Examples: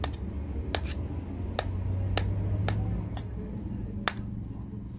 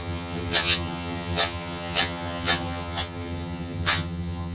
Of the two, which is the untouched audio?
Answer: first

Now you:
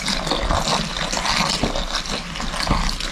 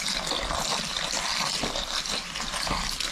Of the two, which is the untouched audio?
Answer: first